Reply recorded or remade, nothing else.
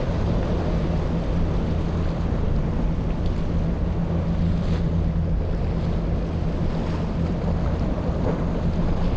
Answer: recorded